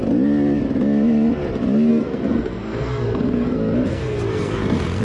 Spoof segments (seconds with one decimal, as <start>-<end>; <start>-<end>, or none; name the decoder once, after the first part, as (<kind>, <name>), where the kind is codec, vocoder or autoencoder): 1.9-5.0 (codec, SNAC)